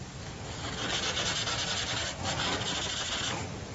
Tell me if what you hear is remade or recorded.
recorded